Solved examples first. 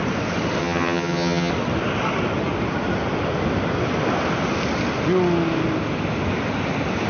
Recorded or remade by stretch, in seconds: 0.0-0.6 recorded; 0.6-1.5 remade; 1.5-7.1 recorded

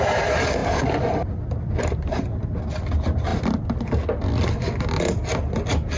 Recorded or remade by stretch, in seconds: 0.0-6.0 recorded

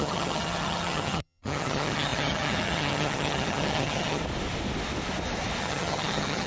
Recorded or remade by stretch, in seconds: 0.0-4.2 remade; 4.2-5.6 recorded; 5.6-6.5 remade

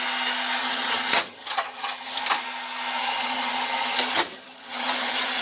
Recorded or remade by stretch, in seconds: 0.0-0.6 recorded; 0.6-2.2 remade; 2.2-3.0 recorded; 3.0-5.4 remade

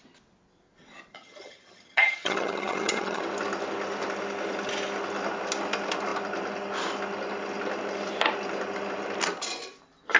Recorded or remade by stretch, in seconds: 0.0-1.1 recorded; 1.1-3.2 remade; 3.2-10.2 recorded

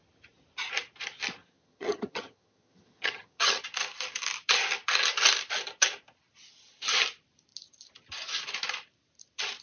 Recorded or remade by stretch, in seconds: 0.0-1.4 recorded; 1.4-3.6 remade; 3.6-9.6 recorded